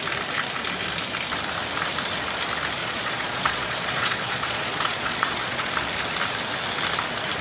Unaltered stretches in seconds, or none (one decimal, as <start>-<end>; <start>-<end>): 0.0-2.8; 5.7-7.4